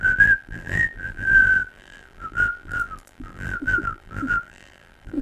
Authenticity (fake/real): fake